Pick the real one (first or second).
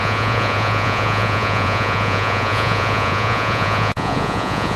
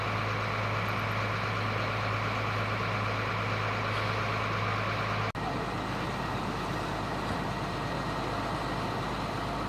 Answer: second